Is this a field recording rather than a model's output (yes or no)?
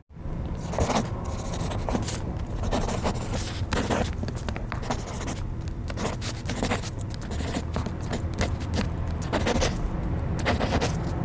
yes